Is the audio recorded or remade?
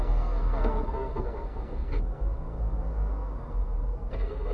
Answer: remade